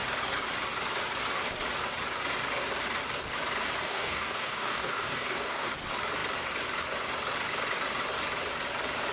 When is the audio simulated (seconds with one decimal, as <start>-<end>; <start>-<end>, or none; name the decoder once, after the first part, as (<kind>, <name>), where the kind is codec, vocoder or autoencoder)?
3.8-5.7 (codec, DAC)